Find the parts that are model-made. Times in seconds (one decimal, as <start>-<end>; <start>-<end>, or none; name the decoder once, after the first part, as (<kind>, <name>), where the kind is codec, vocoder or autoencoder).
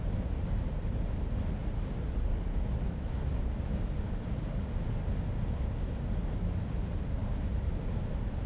none